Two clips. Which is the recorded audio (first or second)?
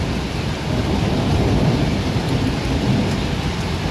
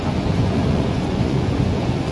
first